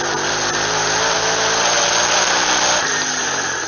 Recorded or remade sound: recorded